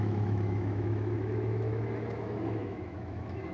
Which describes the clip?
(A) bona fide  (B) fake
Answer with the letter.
B